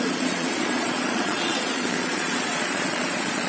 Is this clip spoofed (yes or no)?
yes